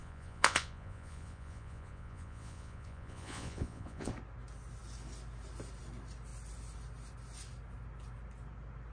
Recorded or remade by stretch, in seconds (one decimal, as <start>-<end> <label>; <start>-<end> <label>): 0.0-4.1 remade; 4.1-8.9 recorded